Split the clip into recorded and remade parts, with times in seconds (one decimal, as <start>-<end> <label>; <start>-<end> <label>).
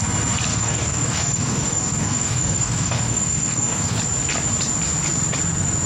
0.0-0.5 recorded; 0.5-4.0 remade; 4.0-5.9 recorded